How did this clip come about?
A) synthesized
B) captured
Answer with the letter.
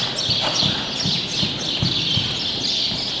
B